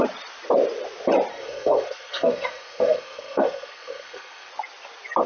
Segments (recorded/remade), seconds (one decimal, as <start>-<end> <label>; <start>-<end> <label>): 0.0-1.3 recorded; 1.3-4.5 remade; 4.5-5.3 recorded